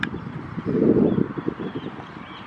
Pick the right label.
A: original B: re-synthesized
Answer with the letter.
B